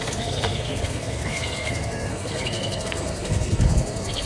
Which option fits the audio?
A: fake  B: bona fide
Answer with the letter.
A